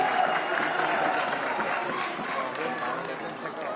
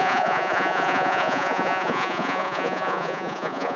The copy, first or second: second